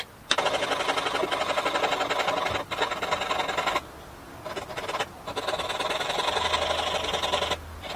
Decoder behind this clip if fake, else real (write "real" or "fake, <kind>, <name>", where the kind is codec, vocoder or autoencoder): real